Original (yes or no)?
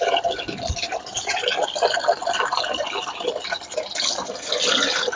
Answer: yes